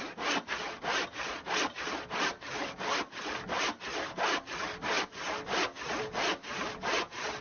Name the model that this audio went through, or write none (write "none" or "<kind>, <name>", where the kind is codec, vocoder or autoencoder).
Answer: none